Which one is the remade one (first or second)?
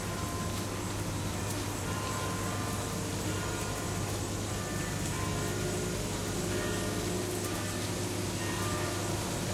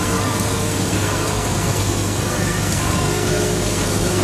second